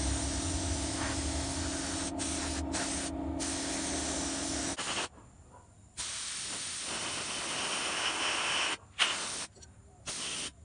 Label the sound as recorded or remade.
recorded